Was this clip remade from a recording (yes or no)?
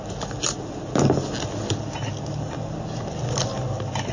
no